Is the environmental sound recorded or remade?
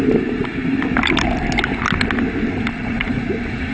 recorded